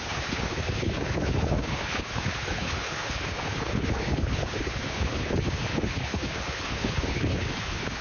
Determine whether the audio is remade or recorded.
remade